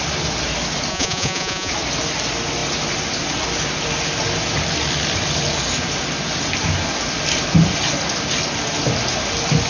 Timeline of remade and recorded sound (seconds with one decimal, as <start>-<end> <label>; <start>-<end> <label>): 0.0-0.9 recorded; 0.9-1.7 remade; 1.7-9.7 recorded